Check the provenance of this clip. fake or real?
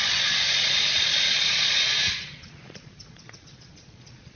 fake